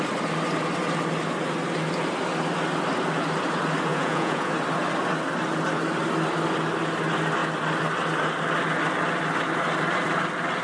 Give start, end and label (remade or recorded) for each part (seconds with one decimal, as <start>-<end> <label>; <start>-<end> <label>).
0.0-3.9 recorded; 3.9-4.5 remade; 4.5-10.6 recorded